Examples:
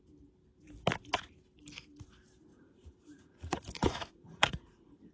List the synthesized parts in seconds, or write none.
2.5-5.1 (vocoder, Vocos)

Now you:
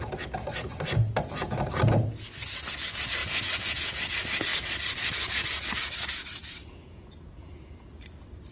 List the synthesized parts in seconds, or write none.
3.2-4.1 (vocoder, Vocos); 6.4-7.7

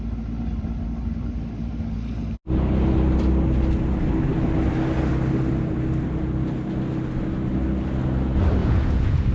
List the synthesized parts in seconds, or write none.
8.6-9.3 (vocoder, Vocos)

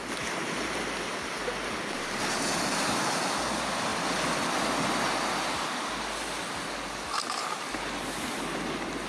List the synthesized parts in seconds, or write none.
none